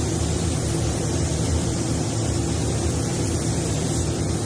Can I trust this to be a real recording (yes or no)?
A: no